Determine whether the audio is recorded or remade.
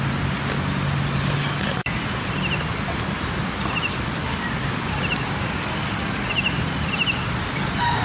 recorded